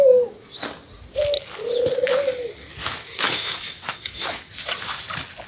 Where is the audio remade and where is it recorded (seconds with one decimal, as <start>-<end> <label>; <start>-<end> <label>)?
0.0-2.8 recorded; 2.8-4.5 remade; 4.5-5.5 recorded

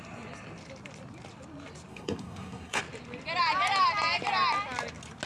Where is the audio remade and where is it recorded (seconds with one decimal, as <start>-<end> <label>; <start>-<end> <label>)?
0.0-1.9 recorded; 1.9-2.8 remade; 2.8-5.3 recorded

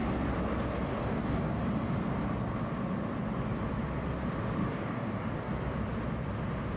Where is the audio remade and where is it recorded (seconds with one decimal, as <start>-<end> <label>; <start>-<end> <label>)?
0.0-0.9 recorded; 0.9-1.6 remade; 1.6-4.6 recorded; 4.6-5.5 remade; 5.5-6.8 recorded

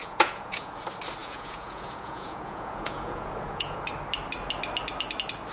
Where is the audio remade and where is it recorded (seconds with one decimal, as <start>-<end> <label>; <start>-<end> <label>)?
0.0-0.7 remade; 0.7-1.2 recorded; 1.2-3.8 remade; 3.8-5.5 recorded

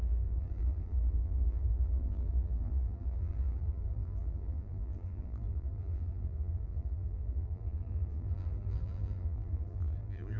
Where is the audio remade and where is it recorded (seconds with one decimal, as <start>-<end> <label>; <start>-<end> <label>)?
0.0-10.4 remade

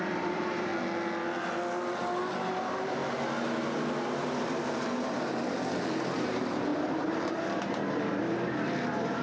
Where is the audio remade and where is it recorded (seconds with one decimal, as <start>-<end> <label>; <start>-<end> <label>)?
0.0-0.7 remade; 0.7-2.3 recorded; 2.3-3.0 remade; 3.0-4.1 recorded; 4.1-9.2 remade